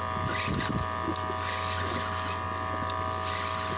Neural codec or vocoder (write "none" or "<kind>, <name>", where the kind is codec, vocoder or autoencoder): none